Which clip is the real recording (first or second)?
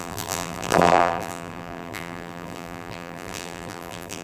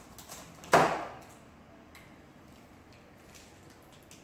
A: second